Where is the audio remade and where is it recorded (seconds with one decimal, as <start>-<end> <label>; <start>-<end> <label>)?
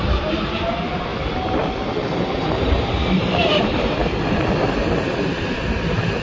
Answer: 0.0-1.1 remade; 1.1-2.2 recorded; 2.2-4.0 remade; 4.0-5.4 recorded; 5.4-6.2 remade